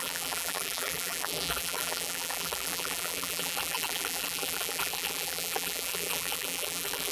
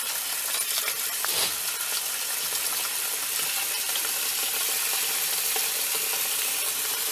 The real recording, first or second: second